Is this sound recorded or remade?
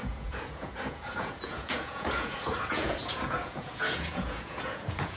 remade